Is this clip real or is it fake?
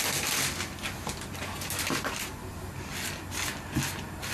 real